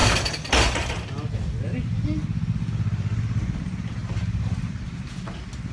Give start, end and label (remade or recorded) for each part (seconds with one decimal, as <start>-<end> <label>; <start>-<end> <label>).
0.0-1.3 remade; 1.3-4.0 recorded; 4.0-4.7 remade; 4.7-5.7 recorded